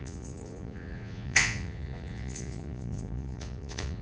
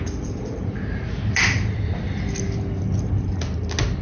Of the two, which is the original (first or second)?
second